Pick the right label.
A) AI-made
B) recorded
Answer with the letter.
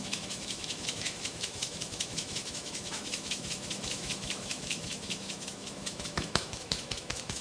A